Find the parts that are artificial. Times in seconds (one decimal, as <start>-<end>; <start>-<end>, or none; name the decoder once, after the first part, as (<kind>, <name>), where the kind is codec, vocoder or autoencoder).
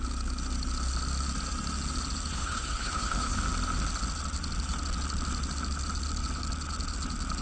2.3-3.4 (codec, HILCodec)